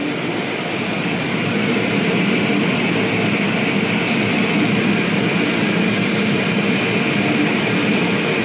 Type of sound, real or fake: real